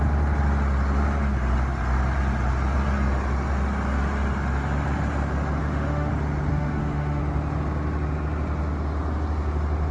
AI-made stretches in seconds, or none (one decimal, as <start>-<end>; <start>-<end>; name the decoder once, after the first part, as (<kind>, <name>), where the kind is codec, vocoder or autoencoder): 5.6-6.1 (autoencoder, DAC-VAE); 6.5-7.2